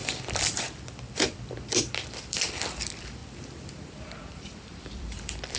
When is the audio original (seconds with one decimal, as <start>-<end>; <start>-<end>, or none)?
3.2-4.2